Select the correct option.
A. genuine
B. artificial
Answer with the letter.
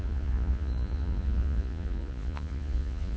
B